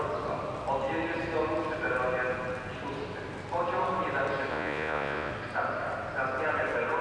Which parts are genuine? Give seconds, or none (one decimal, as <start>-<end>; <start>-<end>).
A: 0.0-4.5; 5.3-7.0